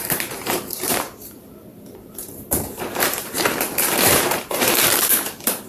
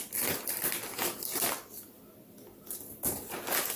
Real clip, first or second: second